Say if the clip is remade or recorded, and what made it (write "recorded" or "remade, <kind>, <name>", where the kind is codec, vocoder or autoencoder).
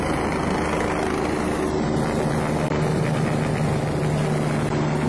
recorded